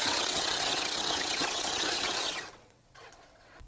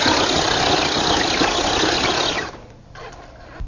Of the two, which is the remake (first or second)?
first